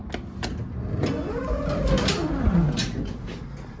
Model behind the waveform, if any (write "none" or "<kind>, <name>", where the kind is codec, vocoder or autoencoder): none